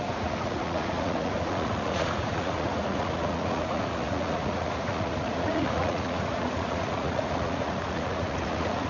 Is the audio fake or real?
fake